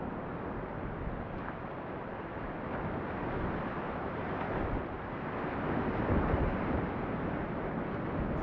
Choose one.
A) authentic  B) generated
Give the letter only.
A